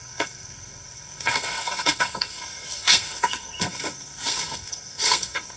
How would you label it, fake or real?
fake